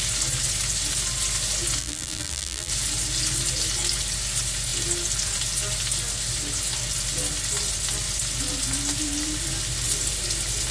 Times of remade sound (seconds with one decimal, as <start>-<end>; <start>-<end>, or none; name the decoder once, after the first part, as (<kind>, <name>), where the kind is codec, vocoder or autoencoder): 1.8-2.7 (vocoder, BigVGAN v2)